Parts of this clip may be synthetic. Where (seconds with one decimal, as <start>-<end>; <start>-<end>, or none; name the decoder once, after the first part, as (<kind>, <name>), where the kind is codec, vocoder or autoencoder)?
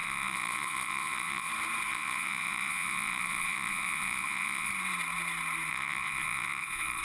0.0-1.5 (vocoder, Vocos); 1.9-4.7; 5.7-7.0